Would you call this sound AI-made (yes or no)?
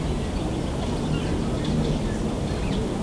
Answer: no